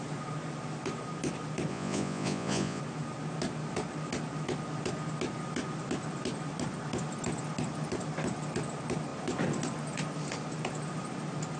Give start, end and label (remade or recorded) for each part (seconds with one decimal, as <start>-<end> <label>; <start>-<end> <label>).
0.0-1.7 recorded; 1.7-2.8 remade; 2.8-11.6 recorded